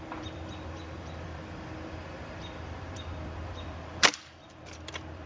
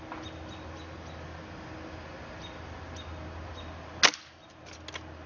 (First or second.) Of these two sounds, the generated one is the first